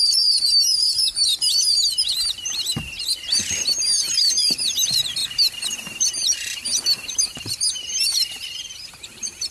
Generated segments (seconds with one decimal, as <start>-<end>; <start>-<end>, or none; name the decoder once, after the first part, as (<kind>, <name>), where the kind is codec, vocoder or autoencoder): 0.0-9.5 (vocoder, BigVGAN v2)